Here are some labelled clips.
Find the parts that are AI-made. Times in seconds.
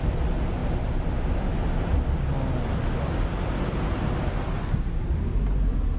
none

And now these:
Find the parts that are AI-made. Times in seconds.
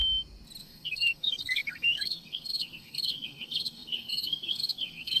0.6-5.2 (codec, SNAC)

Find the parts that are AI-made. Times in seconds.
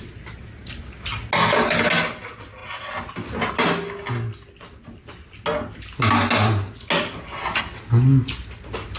none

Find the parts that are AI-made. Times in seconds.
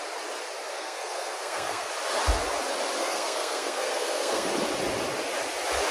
0.7-1.9 (codec, SNAC); 3.0-4.5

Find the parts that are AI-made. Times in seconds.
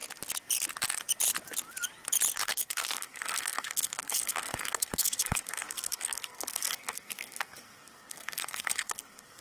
2.3-9.4 (codec, SNAC)